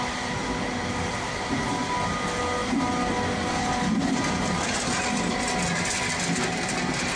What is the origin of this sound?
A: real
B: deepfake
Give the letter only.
A